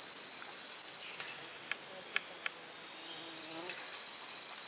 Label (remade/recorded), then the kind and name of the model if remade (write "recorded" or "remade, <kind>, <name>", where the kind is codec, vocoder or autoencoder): recorded